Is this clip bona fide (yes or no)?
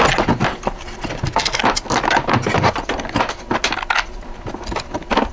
yes